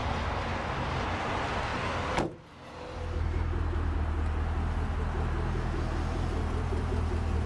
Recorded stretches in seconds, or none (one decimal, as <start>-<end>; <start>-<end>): 0.0-7.5

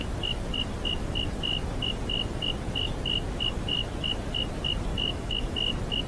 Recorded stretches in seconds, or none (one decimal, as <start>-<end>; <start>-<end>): 0.0-4.9; 5.5-6.1

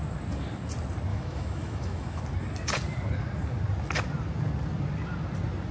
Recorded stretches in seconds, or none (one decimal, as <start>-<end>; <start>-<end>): 0.0-1.1; 2.2-5.7

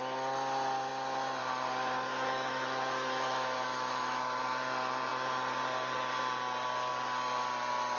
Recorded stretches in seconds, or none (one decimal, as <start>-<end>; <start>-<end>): 0.0-2.1; 4.4-8.0

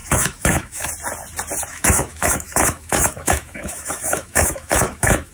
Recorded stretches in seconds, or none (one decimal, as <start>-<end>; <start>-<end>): 0.9-1.7